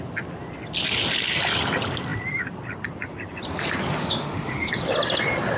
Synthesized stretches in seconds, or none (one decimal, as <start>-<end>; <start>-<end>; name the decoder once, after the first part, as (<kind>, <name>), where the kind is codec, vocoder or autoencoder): 3.9-4.7 (autoencoder, DAC-VAE)